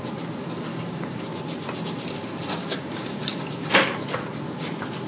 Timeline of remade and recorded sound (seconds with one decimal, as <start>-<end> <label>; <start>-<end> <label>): 0.0-0.7 recorded; 0.7-1.2 remade; 1.2-2.6 recorded; 2.6-3.7 remade; 3.7-5.1 recorded